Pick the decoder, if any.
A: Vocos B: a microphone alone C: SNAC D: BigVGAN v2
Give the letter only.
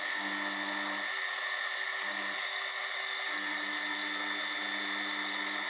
B